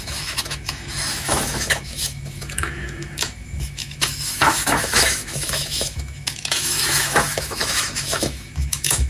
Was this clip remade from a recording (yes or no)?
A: yes